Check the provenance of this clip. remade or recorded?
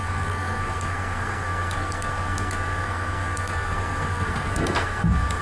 remade